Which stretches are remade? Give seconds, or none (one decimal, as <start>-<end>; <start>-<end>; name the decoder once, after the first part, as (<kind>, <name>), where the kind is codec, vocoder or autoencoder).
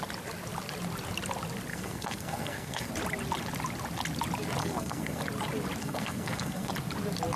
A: 1.7-2.9 (codec, SNAC); 4.6-5.2; 5.8-6.7